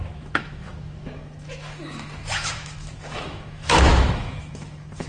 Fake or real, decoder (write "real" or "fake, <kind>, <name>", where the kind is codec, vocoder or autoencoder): fake, autoencoder, DAC-VAE